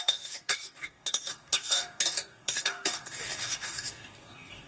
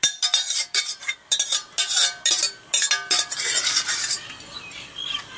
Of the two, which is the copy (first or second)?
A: first